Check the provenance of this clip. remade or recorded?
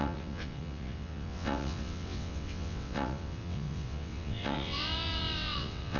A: remade